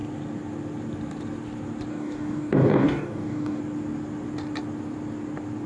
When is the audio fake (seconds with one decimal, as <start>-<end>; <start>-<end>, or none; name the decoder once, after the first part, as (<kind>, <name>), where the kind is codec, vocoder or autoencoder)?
1.9-3.6 (codec, DAC)